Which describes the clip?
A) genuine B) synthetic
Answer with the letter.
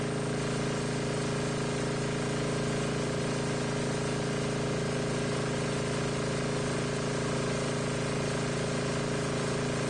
A